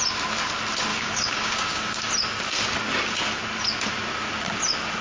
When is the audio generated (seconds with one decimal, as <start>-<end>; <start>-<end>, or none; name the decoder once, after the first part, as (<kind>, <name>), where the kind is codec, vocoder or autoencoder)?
0.9-2.1 (codec, DAC)